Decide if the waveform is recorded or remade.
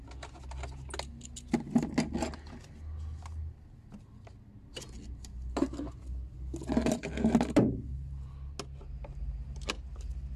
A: recorded